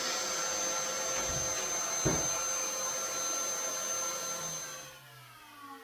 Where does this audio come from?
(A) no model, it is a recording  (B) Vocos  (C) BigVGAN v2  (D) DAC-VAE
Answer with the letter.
A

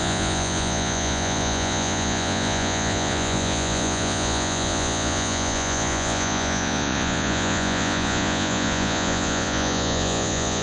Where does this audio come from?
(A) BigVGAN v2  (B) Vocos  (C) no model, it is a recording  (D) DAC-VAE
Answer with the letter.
B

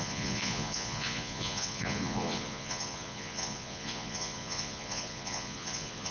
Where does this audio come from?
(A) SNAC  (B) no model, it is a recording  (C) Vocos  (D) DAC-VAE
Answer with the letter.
C